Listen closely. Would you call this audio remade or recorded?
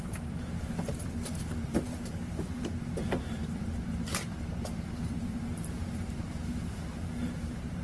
remade